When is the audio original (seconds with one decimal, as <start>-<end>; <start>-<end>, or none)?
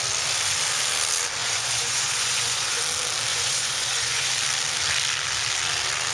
0.0-1.4; 2.8-3.3; 4.3-6.1